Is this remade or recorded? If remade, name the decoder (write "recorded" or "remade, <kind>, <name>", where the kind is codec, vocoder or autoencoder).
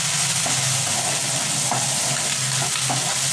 recorded